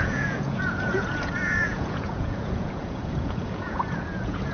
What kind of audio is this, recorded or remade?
remade